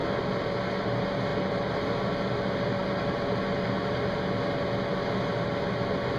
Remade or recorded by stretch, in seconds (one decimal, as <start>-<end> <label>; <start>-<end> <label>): 0.0-6.2 recorded